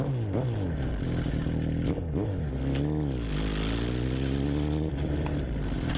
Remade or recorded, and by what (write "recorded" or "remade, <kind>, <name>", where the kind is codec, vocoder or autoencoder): recorded